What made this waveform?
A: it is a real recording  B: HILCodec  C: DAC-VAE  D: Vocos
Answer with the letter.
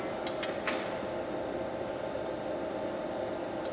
A